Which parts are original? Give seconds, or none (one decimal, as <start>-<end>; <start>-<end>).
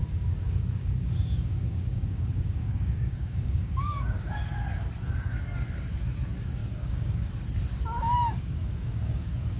4.4-6.6; 7.3-8.0